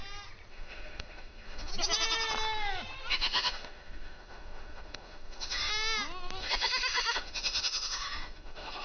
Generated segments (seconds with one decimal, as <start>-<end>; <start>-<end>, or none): 0.5-1.7; 3.1-5.7; 6.4-8.8